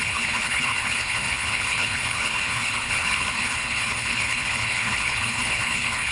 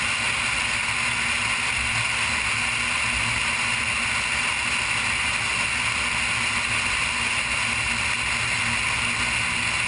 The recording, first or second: second